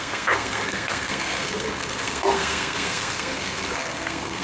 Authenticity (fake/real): fake